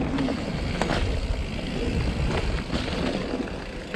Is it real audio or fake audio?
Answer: real